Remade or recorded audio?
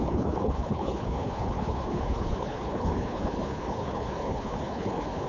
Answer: remade